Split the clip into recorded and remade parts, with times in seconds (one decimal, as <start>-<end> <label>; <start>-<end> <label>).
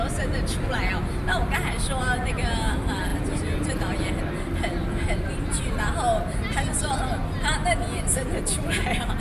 0.0-9.2 recorded